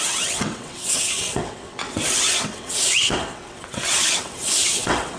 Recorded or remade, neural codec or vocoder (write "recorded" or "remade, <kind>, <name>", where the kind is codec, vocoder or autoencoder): remade, vocoder, WaveNeXt